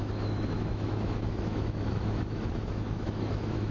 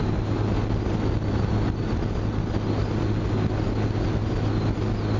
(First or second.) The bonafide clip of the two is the second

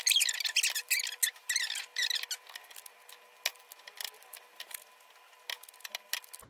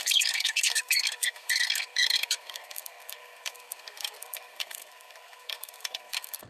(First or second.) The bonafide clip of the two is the first